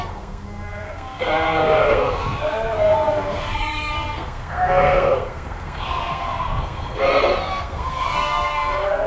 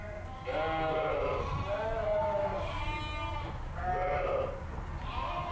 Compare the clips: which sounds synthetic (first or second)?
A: first